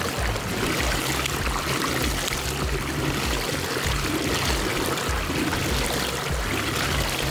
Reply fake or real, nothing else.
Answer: real